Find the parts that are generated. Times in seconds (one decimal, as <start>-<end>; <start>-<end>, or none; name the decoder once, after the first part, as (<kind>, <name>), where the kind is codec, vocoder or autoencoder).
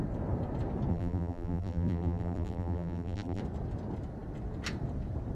0.9-3.4 (vocoder, BigVGAN v2)